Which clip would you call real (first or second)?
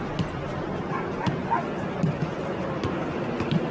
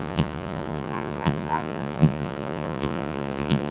first